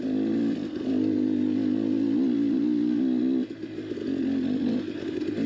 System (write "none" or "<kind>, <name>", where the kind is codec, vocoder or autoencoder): none